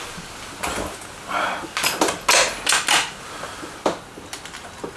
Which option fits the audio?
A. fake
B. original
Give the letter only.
B